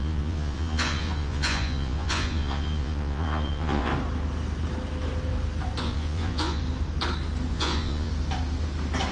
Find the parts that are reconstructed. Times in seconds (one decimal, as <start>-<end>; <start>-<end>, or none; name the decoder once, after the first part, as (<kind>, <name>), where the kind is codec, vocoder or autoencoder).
0.0-3.9 (vocoder, Vocos); 5.8-6.6; 7.5-8.1